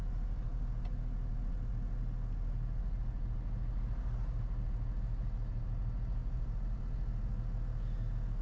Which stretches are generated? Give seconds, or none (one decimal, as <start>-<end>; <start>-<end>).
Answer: 6.2-6.8